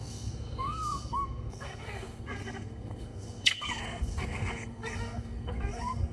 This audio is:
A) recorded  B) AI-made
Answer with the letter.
B